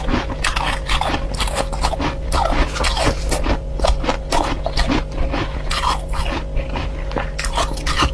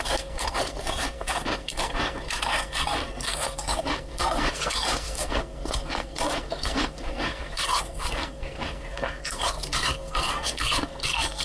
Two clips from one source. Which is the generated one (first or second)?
second